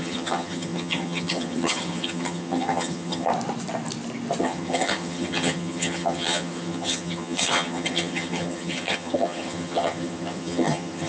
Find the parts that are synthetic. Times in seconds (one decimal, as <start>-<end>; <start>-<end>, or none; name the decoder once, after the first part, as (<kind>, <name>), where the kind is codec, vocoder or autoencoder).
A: 0.0-3.3 (vocoder, HiFi-GAN); 4.4-11.1